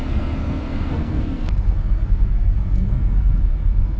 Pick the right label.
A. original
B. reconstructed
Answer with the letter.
B